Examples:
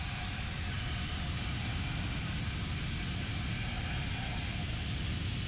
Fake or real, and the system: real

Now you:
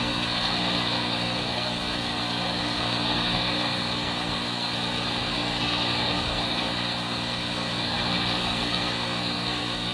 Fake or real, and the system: fake, codec, SNAC